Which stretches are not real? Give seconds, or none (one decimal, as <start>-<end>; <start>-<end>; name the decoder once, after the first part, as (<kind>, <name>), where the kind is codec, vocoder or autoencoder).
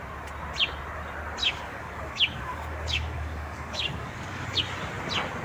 1.4-4.6 (codec, DAC)